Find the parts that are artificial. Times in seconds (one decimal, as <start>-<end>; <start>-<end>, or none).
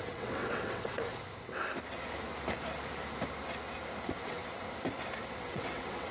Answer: 0.0-1.1; 4.0-4.4; 5.4-6.1